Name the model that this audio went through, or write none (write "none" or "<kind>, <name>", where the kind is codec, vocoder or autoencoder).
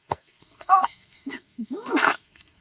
codec, SNAC